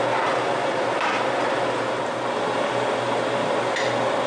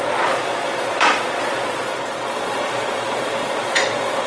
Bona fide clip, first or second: first